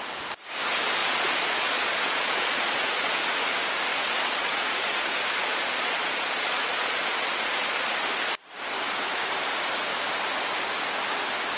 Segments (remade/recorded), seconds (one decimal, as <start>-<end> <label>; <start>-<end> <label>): 0.0-1.0 recorded; 1.0-3.3 remade; 3.3-3.9 recorded; 3.9-8.2 remade; 8.2-11.6 recorded